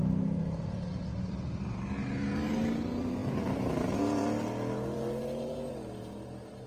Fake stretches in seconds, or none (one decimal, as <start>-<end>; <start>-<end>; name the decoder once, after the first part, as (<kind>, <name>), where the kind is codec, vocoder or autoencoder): 0.0-6.7 (vocoder, BigVGAN v2)